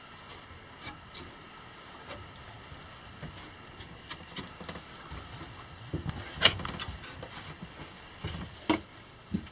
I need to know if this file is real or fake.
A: real